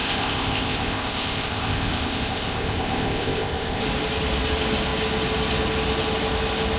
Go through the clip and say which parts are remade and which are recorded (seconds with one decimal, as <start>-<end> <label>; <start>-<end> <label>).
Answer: 0.0-3.8 remade; 3.8-6.8 recorded